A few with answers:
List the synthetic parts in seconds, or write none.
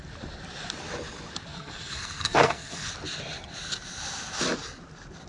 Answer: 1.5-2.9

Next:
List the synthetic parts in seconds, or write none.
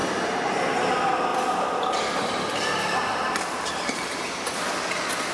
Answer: 0.0-0.6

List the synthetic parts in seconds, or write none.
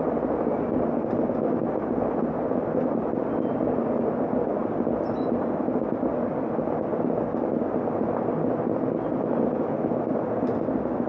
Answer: none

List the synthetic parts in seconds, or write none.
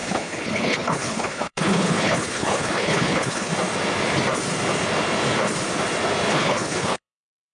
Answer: 0.0-3.5; 6.3-7.5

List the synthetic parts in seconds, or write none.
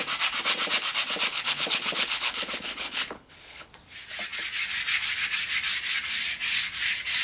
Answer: 1.3-3.7